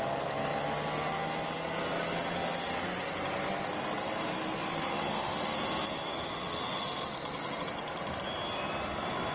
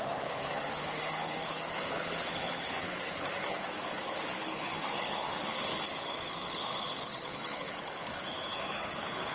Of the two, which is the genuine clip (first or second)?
first